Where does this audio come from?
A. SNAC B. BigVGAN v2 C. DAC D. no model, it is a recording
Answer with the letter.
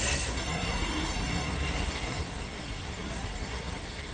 A